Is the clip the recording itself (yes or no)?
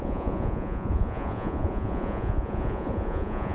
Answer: no